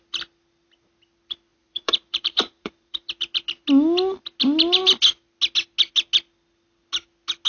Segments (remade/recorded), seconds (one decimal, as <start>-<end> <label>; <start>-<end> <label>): 0.0-1.5 recorded; 1.5-3.1 remade; 3.1-7.5 recorded